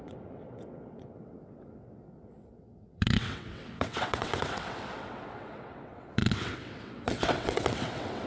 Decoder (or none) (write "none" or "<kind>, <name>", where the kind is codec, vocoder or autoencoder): vocoder, WaveNeXt